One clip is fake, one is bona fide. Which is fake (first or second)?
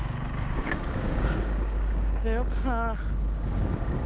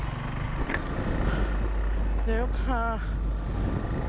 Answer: first